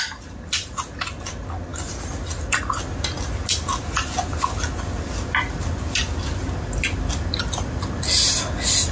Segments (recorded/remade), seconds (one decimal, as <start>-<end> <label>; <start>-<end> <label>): 0.0-8.9 recorded